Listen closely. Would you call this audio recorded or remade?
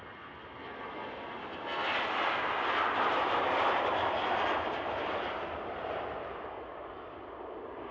recorded